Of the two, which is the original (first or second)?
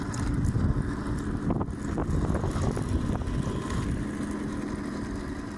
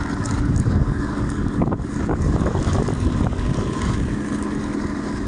first